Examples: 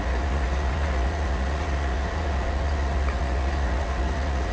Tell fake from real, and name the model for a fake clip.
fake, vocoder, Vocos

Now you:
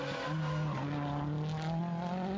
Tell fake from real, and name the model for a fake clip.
real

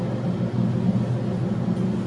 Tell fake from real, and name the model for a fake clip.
real